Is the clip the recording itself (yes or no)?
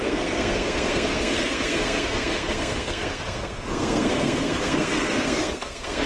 no